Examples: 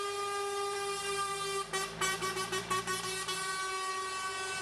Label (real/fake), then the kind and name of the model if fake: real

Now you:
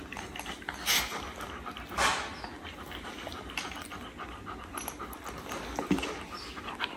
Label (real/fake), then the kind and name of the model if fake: real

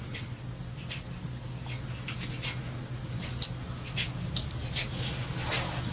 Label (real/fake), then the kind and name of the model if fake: real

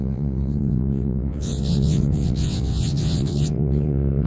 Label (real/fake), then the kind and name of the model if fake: fake, vocoder, WaveNeXt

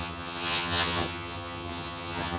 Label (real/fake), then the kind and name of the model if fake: fake, vocoder, HiFi-GAN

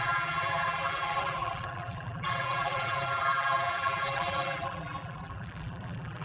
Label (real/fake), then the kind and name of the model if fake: fake, vocoder, BigVGAN v2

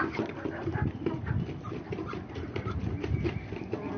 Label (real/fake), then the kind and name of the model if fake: fake, vocoder, BigVGAN v2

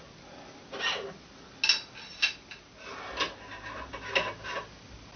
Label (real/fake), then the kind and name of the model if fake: real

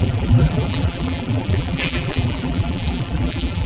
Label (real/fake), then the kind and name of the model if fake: fake, vocoder, BigVGAN v2